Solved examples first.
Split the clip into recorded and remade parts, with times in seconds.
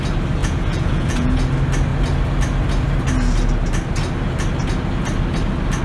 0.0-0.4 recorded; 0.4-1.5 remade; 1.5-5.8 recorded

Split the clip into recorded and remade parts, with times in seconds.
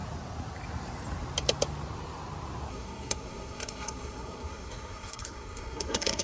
0.0-2.7 recorded; 2.7-6.2 remade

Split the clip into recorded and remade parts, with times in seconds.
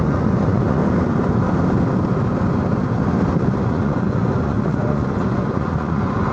0.0-0.8 remade; 0.8-3.6 recorded; 3.6-6.3 remade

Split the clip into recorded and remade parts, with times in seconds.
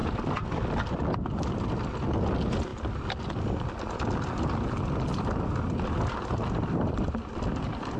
0.0-8.0 recorded